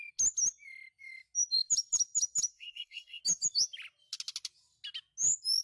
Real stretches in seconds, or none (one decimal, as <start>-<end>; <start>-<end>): 0.0-2.5; 3.2-5.6